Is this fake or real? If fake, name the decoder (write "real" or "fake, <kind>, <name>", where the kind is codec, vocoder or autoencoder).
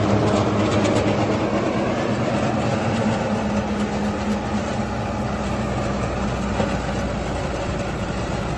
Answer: real